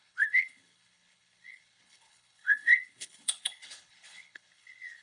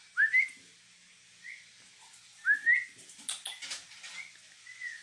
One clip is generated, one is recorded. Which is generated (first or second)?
first